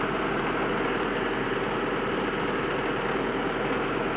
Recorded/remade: recorded